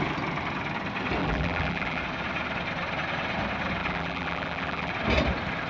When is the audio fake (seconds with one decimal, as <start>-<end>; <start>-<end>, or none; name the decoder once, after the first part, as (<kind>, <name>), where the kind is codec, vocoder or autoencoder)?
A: 1.2-2.0 (vocoder, BigVGAN v2); 3.8-4.9